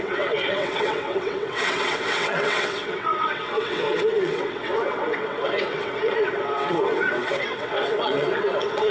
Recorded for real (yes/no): no